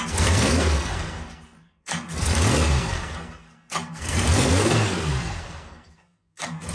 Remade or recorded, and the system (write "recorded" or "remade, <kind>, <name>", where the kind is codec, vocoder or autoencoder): remade, codec, SNAC